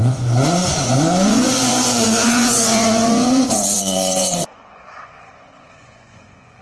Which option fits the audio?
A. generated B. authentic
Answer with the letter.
A